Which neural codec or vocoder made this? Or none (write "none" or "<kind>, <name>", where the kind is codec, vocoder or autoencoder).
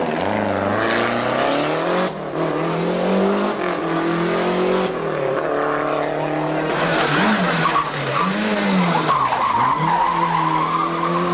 none